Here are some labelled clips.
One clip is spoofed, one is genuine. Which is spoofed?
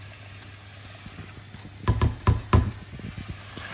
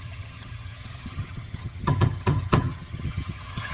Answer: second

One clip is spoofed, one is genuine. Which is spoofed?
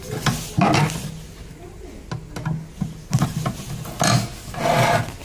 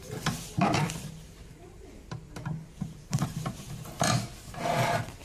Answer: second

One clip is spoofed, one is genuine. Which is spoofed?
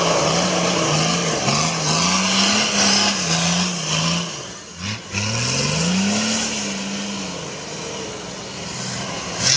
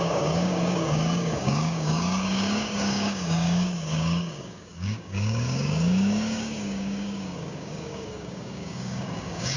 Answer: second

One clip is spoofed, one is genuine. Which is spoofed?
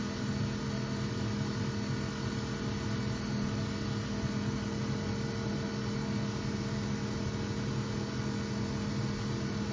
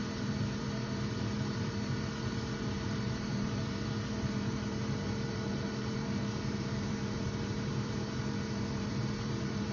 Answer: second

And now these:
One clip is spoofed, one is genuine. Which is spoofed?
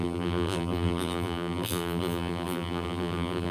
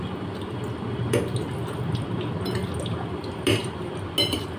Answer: first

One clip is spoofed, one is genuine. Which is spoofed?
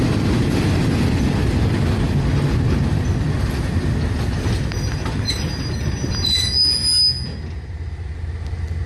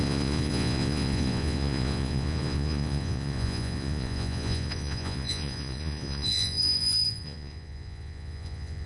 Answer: second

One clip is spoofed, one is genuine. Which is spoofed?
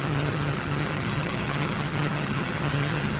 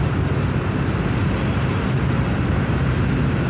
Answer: first